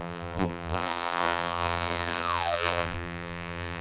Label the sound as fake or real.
fake